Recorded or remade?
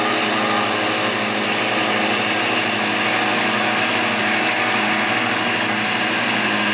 recorded